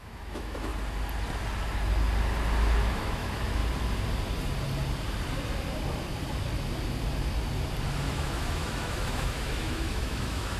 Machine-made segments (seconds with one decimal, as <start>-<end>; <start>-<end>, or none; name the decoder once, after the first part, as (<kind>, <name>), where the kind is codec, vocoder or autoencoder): 0.0-0.7 (autoencoder, DAC-VAE); 2.8-3.6; 8.1-10.6